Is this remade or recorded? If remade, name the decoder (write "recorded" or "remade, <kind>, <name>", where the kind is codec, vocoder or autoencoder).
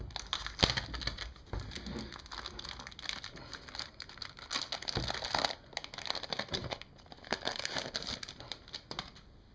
recorded